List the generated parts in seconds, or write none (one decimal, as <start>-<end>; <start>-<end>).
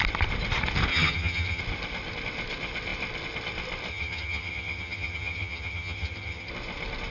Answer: 0.9-1.6; 3.9-6.5